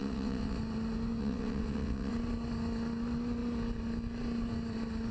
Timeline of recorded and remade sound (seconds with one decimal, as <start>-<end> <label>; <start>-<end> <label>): 0.0-0.6 remade; 0.6-1.2 recorded; 1.2-2.1 remade; 2.1-5.1 recorded